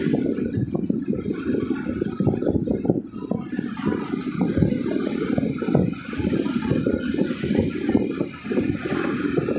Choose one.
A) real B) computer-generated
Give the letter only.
B